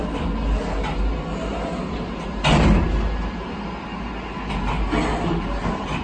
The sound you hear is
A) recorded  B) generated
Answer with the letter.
A